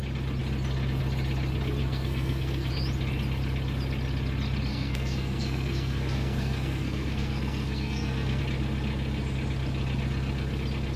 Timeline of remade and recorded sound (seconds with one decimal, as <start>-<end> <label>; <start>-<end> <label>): 0.0-1.8 recorded; 1.8-2.7 remade; 2.7-4.7 recorded; 4.7-8.4 remade; 8.4-11.0 recorded